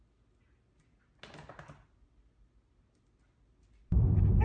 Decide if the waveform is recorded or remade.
recorded